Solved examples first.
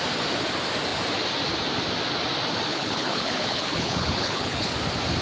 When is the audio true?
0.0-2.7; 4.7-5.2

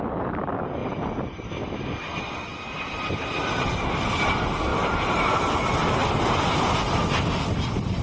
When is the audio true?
0.0-0.8; 1.9-8.0

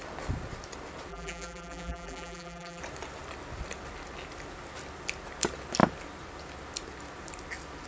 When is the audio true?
0.0-1.1; 2.8-7.9

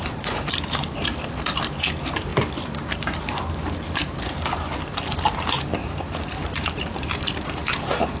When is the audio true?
2.3-3.0

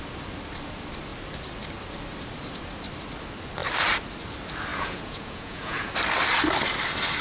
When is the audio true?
0.0-4.7; 5.9-7.2

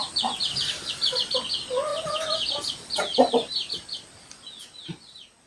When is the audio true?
0.0-5.5

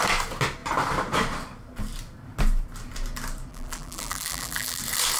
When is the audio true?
0.0-3.5; 4.8-5.2

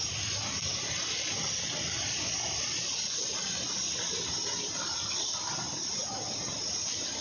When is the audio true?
0.0-7.2